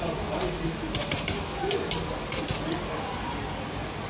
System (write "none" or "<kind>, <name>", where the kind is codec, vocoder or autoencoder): none